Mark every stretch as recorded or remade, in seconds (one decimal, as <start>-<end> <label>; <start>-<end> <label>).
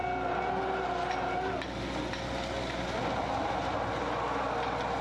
0.0-5.0 recorded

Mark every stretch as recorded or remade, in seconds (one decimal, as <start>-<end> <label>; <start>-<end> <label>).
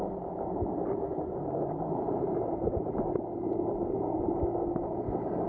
0.0-1.1 recorded; 1.1-4.4 remade; 4.4-5.5 recorded